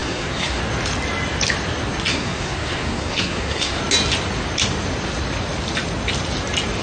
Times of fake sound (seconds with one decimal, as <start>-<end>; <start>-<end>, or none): 0.0-0.6; 2.1-3.8